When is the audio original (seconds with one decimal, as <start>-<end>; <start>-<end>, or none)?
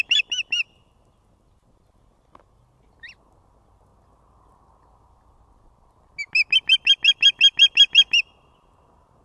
0.0-9.2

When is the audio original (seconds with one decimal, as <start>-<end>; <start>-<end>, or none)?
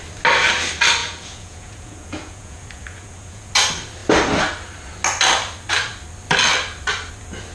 0.0-1.0; 3.5-7.5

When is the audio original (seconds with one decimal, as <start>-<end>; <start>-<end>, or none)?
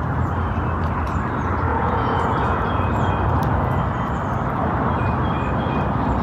0.0-1.7; 3.1-6.2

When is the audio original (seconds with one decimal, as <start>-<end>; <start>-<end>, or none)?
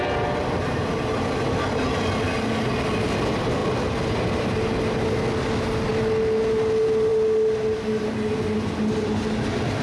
0.0-9.8